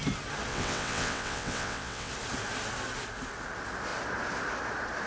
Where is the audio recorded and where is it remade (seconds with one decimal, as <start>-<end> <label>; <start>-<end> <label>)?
0.0-0.5 recorded; 0.5-2.1 remade; 2.1-5.1 recorded